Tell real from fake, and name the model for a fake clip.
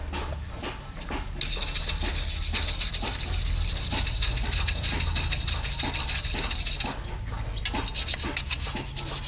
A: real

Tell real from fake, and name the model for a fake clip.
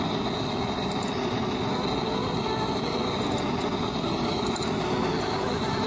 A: real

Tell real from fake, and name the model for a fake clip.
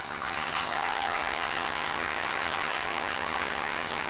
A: fake, vocoder, HiFi-GAN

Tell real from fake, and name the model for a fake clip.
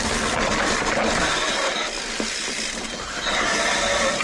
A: real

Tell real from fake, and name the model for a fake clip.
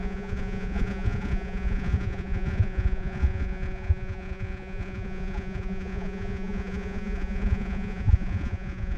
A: fake, vocoder, Vocos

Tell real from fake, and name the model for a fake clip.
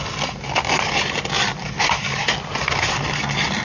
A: real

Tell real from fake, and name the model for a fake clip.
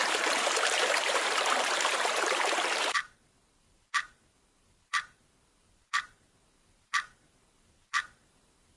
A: fake, vocoder, BigVGAN v2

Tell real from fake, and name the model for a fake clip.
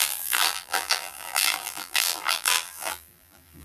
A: fake, vocoder, BigVGAN v2